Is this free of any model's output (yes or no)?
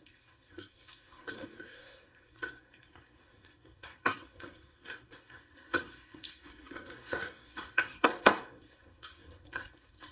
no